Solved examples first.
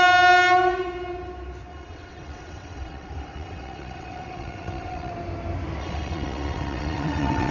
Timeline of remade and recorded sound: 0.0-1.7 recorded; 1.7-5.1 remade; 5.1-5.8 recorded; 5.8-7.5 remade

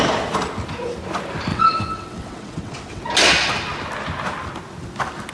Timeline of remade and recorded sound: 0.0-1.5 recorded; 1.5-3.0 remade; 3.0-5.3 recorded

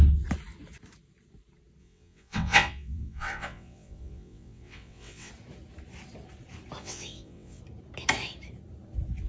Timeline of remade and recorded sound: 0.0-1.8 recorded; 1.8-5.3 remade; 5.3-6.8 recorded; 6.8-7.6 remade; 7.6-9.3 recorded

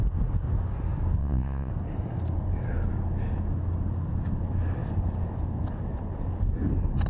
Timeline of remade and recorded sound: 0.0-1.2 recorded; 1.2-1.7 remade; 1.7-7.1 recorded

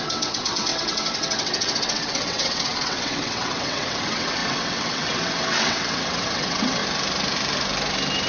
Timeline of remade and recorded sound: 0.0-6.8 remade; 6.8-8.3 recorded

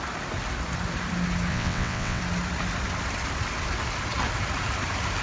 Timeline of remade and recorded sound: 0.0-1.5 recorded; 1.5-2.2 remade; 2.2-5.2 recorded

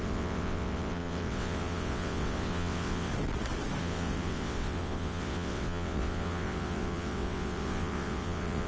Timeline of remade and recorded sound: 0.0-3.1 remade; 3.1-3.8 recorded; 3.8-8.7 remade